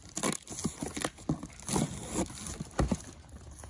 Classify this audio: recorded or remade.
recorded